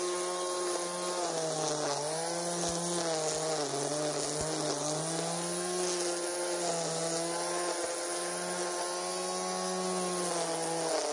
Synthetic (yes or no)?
no